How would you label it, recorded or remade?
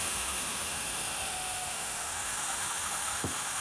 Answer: remade